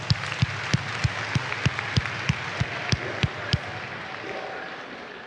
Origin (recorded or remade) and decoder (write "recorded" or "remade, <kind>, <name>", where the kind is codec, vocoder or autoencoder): recorded